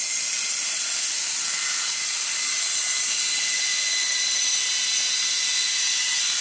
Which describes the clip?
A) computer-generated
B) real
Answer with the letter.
B